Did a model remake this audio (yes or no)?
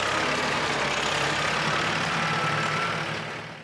no